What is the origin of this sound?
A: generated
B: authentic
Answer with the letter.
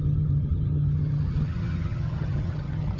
A